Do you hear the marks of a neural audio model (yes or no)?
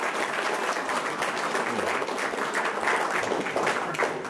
no